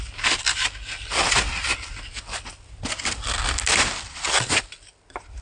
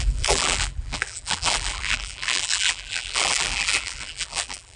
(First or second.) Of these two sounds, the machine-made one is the second